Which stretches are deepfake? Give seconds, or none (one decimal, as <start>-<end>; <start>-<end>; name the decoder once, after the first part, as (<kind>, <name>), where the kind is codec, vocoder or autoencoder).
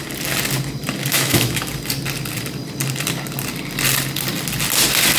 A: 1.1-1.7 (autoencoder, DAC-VAE)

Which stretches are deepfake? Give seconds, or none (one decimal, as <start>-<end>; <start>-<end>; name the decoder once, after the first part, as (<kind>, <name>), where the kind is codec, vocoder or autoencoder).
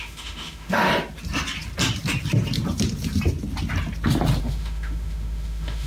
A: 0.0-0.9 (autoencoder, DAC-VAE); 4.4-5.9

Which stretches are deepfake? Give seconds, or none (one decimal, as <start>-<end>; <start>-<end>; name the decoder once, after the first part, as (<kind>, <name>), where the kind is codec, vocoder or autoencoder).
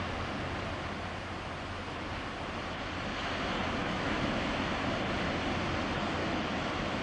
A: 3.8-4.7 (autoencoder, DAC-VAE); 6.2-7.0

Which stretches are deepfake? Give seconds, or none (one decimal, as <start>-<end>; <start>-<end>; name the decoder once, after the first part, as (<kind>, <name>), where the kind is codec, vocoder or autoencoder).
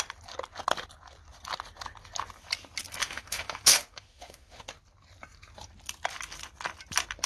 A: 3.0-4.7 (autoencoder, DAC-VAE)